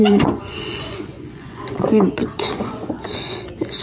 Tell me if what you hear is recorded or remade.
remade